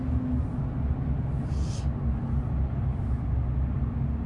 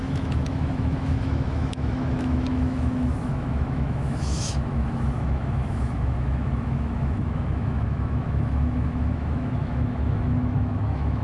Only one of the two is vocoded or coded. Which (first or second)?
second